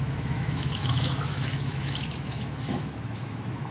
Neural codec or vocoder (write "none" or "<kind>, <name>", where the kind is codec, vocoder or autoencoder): autoencoder, DAC-VAE